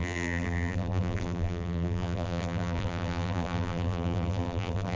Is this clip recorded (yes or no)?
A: no